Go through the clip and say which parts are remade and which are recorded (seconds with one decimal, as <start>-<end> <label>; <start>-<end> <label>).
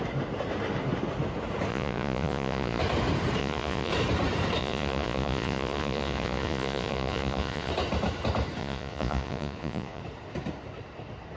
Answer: 0.0-1.7 recorded; 1.7-2.8 remade; 2.8-3.4 recorded; 3.4-3.9 remade; 3.9-4.6 recorded; 4.6-7.7 remade; 7.7-8.6 recorded; 8.6-10.0 remade; 10.0-11.4 recorded